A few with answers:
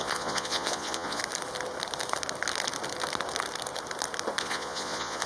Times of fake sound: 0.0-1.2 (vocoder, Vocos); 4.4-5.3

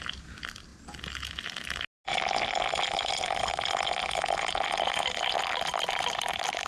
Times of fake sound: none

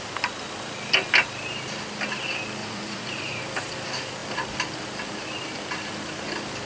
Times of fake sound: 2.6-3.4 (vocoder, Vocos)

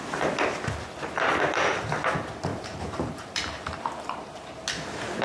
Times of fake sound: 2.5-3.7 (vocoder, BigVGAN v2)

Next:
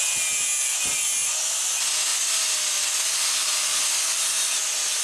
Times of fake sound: none

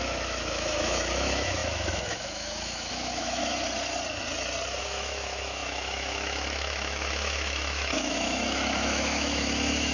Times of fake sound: 0.0-3.5 (autoencoder, DAC-VAE); 4.8-9.9

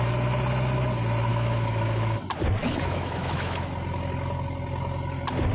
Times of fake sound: 1.3-2.2 (autoencoder, DAC-VAE); 2.6-3.7

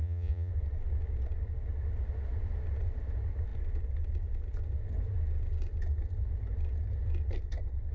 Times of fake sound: 0.0-0.5 (vocoder, Vocos)